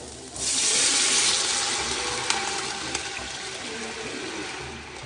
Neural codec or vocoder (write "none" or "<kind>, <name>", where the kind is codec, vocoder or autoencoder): none